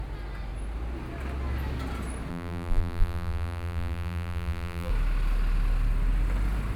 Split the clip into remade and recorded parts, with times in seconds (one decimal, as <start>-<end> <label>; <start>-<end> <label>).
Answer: 0.0-2.3 recorded; 2.3-4.9 remade; 4.9-6.8 recorded

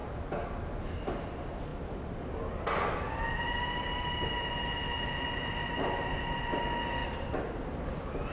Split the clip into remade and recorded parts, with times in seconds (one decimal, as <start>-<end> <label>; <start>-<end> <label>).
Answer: 0.0-7.0 recorded; 7.0-8.3 remade

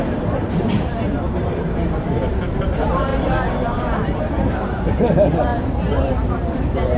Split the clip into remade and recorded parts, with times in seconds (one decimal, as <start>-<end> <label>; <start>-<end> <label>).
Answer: 0.0-3.1 remade; 3.1-4.2 recorded; 4.2-7.0 remade

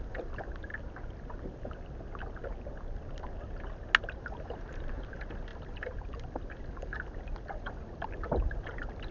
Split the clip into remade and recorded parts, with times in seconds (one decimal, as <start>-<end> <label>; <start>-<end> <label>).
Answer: 0.0-0.7 remade; 0.7-4.2 recorded; 4.2-9.1 remade

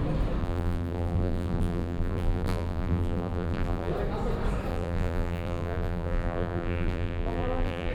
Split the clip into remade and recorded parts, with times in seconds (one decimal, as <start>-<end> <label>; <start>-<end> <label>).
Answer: 0.0-0.4 recorded; 0.4-3.9 remade; 3.9-4.7 recorded; 4.7-7.9 remade

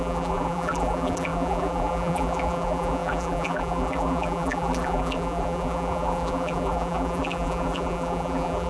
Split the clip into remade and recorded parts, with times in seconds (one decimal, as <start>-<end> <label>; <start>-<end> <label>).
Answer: 0.0-8.7 remade

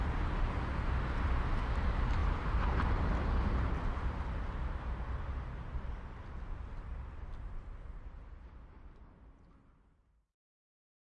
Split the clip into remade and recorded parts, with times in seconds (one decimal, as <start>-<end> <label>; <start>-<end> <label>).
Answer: 0.0-2.2 recorded; 2.2-2.9 remade; 2.9-11.2 recorded

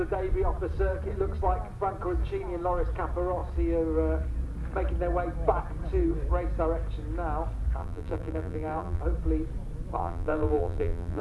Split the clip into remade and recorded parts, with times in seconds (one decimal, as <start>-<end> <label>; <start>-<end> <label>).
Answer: 0.0-7.8 recorded; 7.8-9.0 remade; 9.0-10.0 recorded; 10.0-11.2 remade